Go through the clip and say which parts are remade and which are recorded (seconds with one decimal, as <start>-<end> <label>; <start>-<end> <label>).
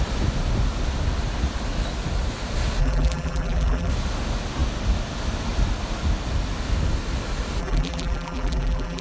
0.0-2.8 recorded; 2.8-3.9 remade; 3.9-7.6 recorded; 7.6-9.0 remade